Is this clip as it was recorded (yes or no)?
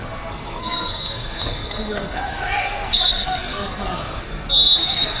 no